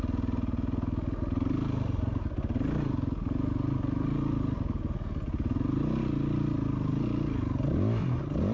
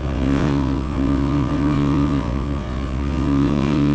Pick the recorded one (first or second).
first